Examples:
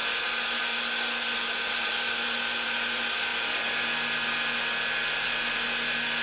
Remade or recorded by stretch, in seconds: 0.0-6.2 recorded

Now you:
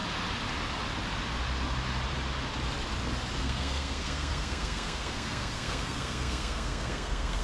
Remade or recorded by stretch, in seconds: 0.0-3.4 recorded; 3.4-7.4 remade